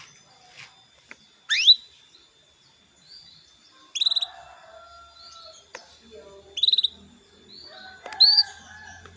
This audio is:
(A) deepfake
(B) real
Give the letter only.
B